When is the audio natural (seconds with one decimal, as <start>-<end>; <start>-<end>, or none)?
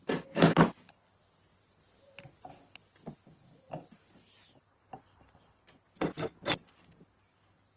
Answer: 0.0-7.8